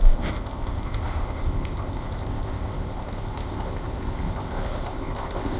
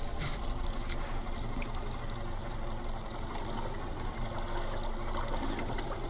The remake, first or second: first